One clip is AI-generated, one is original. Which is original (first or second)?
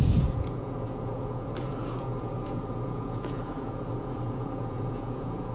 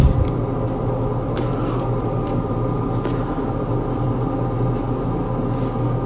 second